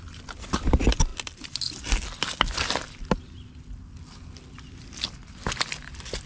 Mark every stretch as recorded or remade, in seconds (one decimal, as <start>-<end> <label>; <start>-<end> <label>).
0.0-6.3 recorded